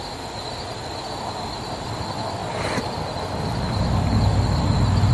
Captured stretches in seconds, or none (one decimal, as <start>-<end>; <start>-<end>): 0.0-5.1